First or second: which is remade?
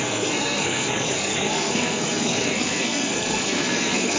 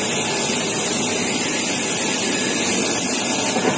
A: first